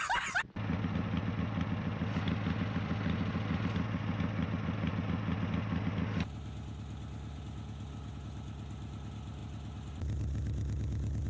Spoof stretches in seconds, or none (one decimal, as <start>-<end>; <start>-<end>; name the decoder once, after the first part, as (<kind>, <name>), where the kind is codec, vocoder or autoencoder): none